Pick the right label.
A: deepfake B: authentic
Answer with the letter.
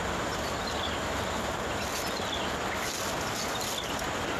B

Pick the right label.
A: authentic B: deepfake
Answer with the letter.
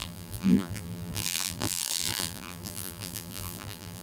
B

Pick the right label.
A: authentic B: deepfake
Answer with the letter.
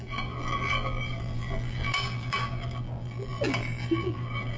B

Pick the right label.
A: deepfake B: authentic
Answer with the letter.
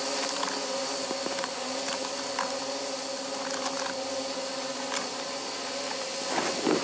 B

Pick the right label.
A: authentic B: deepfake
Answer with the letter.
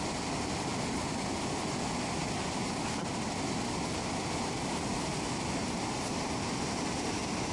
A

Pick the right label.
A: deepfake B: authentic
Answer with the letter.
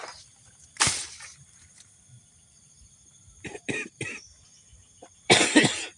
A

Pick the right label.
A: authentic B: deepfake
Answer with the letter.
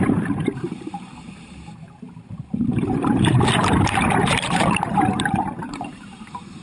B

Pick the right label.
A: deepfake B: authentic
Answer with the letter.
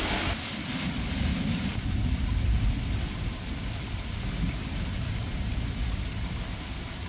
B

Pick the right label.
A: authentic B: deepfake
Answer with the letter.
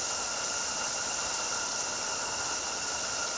A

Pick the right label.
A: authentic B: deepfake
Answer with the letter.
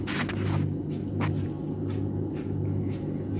A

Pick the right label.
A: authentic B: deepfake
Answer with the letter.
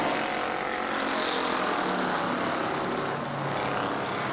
A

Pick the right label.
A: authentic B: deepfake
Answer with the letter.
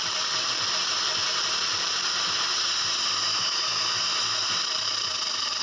A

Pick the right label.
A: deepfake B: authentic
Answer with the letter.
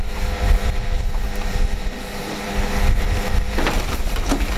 A